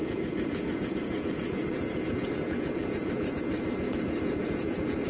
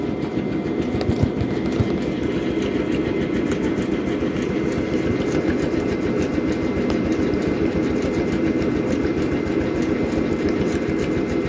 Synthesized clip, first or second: first